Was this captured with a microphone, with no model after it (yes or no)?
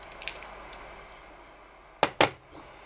yes